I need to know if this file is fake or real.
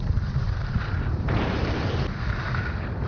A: real